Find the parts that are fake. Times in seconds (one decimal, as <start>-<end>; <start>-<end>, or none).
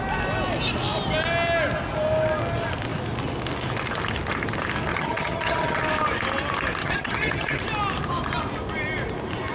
4.9-5.8; 6.8-7.6